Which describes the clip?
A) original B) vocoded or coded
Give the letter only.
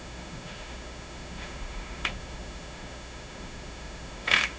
B